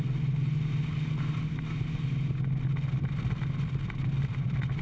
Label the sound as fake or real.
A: real